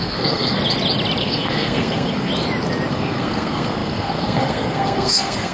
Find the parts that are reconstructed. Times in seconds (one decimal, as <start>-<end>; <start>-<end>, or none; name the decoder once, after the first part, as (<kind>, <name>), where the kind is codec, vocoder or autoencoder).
0.0-0.6 (codec, SNAC); 1.2-2.3; 2.9-5.5